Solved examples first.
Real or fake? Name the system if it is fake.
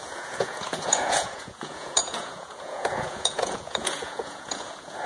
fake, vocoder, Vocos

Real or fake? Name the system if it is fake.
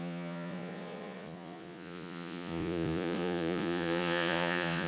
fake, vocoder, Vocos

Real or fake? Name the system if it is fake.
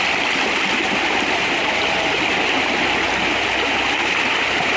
real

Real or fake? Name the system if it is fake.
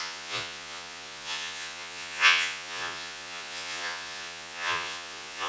fake, vocoder, Vocos